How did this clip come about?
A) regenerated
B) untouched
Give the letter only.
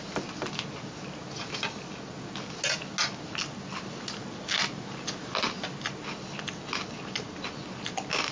B